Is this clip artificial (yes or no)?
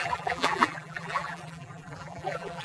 yes